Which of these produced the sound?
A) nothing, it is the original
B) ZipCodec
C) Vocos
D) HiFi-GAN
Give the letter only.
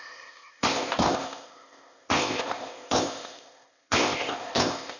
B